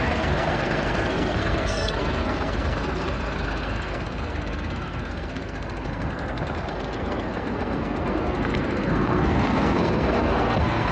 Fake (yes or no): yes